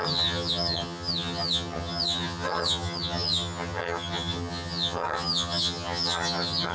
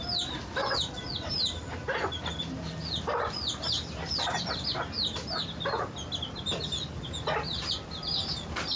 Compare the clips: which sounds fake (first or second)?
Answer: first